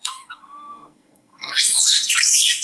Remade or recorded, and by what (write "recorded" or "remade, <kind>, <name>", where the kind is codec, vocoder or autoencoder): remade, codec, SNAC